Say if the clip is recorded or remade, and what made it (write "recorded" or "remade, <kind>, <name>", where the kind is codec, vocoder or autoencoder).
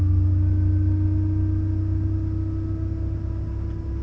recorded